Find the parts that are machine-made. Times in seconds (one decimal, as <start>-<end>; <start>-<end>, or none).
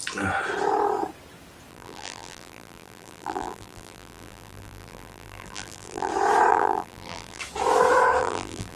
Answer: 1.7-6.1; 6.5-7.4; 8.2-8.8